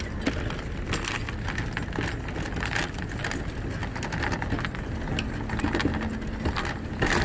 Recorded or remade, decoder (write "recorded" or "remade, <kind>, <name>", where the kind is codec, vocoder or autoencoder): recorded